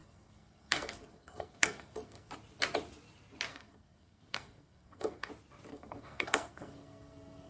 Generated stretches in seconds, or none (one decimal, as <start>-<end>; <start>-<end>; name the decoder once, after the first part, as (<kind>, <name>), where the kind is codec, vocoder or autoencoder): 0.0-2.3 (codec, SNAC); 3.5-5.3; 5.7-7.5